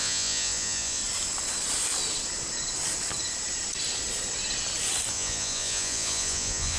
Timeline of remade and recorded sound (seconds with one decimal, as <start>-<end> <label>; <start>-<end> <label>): 0.0-1.0 remade; 1.0-5.1 recorded; 5.1-6.8 remade